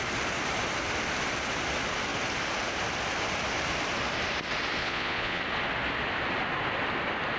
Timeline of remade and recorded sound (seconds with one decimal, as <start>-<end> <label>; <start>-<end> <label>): 0.0-4.8 recorded; 4.8-5.4 remade; 5.4-7.4 recorded